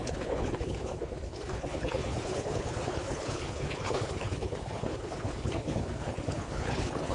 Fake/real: fake